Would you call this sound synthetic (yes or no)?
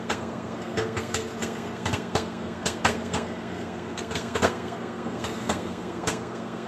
yes